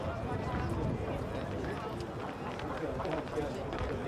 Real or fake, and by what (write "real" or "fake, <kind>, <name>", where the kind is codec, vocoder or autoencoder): real